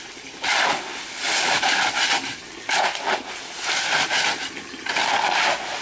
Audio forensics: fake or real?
real